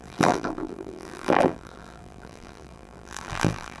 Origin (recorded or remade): remade